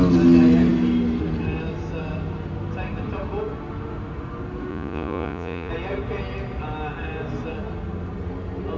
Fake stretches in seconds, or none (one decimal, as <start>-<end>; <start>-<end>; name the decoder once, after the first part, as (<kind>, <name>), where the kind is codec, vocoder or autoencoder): 4.7-5.7 (vocoder, Vocos)